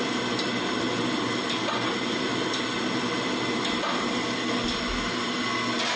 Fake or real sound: real